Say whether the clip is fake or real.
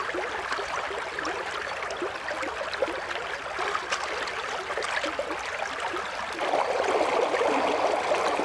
real